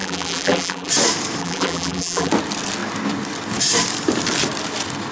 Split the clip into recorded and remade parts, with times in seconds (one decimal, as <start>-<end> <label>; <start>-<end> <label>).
0.0-0.9 remade; 0.9-1.4 recorded; 1.4-2.3 remade; 2.3-5.1 recorded